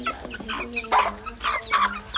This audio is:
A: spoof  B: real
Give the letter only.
B